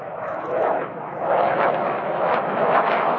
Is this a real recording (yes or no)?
no